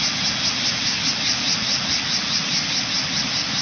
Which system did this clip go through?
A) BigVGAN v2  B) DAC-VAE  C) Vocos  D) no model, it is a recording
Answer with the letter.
D